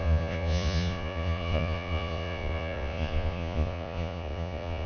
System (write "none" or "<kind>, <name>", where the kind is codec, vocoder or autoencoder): vocoder, Vocos